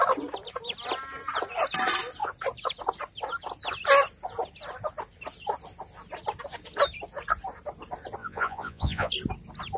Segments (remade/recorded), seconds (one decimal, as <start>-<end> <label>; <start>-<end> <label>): 0.0-8.2 recorded; 8.2-9.1 remade; 9.1-9.8 recorded

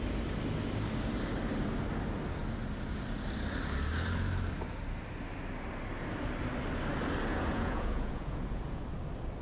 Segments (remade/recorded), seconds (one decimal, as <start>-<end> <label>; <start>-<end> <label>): 0.0-7.3 recorded; 7.3-8.8 remade; 8.8-9.4 recorded

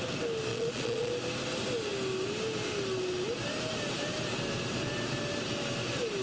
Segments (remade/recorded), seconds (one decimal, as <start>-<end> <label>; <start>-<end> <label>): 0.0-0.5 recorded; 0.5-1.1 remade; 1.1-6.2 recorded

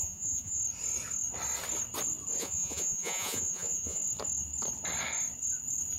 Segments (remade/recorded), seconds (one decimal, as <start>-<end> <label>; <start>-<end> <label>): 0.0-0.6 remade; 0.6-2.4 recorded; 2.4-4.0 remade; 4.0-6.0 recorded

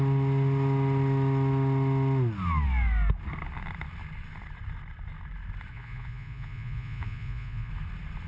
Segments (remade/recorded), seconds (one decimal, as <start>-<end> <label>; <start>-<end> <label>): 0.0-5.7 recorded; 5.7-7.7 remade; 7.7-8.3 recorded

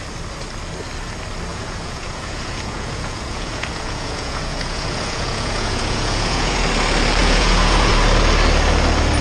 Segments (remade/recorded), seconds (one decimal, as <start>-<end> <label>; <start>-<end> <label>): 0.0-1.5 recorded; 1.5-6.6 remade; 6.6-7.2 recorded; 7.2-7.9 remade; 7.9-9.2 recorded

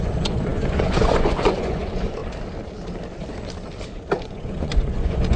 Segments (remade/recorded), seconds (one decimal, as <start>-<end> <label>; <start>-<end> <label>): 0.0-2.2 remade; 2.2-4.2 recorded; 4.2-5.4 remade